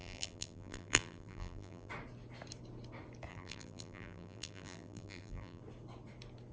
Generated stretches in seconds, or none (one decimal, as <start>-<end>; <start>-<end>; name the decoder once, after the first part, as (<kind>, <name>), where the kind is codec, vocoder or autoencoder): 0.0-1.9 (vocoder, BigVGAN v2); 3.3-5.6